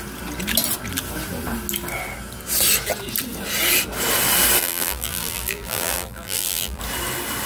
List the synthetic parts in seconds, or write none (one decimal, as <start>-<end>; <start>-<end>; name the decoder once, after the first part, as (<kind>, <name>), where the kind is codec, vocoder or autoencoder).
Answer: 4.6-6.8 (vocoder, BigVGAN v2)